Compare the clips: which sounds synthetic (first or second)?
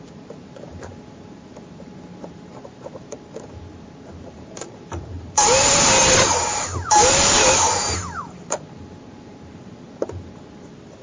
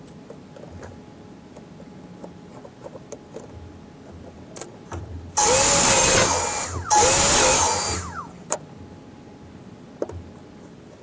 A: first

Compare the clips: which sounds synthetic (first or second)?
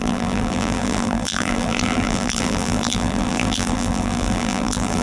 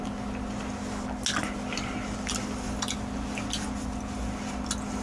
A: first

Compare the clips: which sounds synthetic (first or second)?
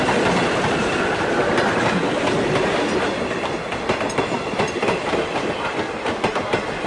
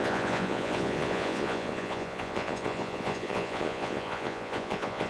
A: second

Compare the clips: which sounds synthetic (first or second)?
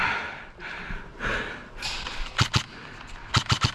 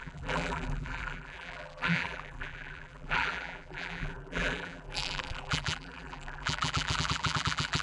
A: second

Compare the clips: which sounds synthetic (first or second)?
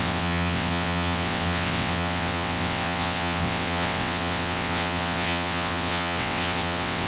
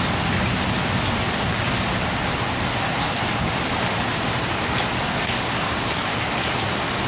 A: first